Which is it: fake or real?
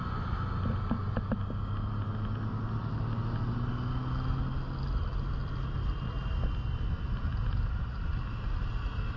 real